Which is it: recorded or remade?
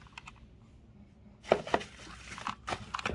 recorded